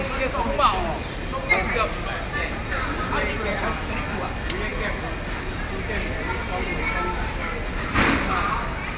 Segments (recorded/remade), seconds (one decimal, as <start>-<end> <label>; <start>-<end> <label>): 0.0-9.0 recorded